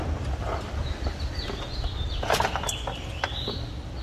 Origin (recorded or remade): remade